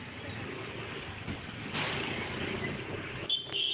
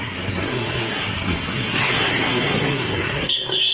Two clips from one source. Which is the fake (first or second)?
second